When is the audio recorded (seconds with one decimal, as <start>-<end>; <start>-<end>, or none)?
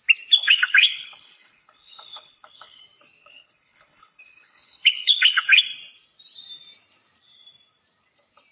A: 0.0-0.4; 2.8-3.2; 5.6-8.5